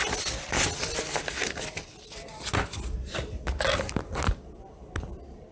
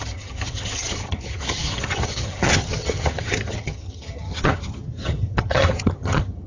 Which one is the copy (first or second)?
second